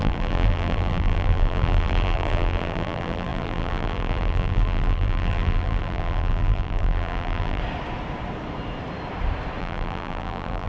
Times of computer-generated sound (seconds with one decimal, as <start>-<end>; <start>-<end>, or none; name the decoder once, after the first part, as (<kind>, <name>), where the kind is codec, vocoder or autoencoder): 0.0-7.6 (vocoder, BigVGAN v2); 9.6-10.7